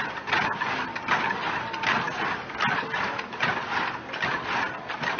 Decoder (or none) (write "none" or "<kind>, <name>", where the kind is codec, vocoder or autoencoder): none